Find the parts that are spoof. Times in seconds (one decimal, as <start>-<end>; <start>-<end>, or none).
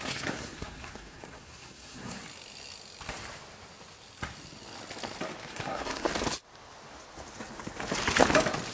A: 0.0-2.2; 5.5-6.1